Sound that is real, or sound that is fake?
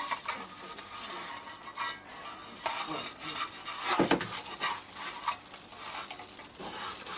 real